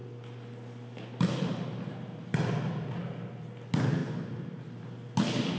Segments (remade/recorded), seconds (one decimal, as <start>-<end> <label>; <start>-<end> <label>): 0.0-5.6 recorded